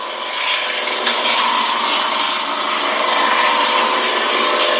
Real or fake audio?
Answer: real